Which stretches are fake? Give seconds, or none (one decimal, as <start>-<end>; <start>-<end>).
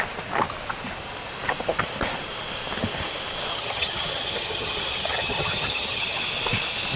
3.5-6.2